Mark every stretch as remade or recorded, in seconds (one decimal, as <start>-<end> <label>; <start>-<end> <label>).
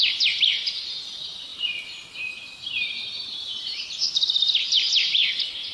0.0-1.5 remade; 1.5-2.3 recorded; 2.3-5.7 remade